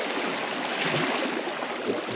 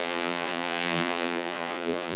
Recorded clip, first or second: first